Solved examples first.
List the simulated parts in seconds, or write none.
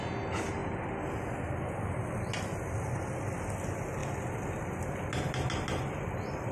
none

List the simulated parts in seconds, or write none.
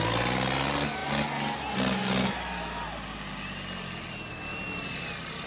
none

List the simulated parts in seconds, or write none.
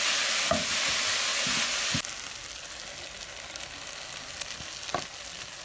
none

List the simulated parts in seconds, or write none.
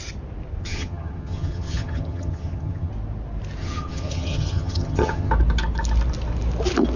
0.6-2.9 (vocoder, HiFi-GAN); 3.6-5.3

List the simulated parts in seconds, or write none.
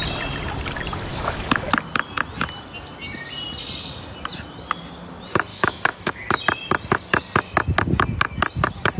1.1-1.7 (autoencoder, DAC-VAE); 5.5-6.4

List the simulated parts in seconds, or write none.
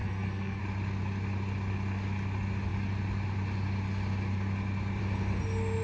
0.0-0.6 (codec, SNAC)